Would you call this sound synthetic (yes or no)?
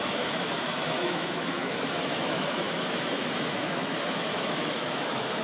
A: yes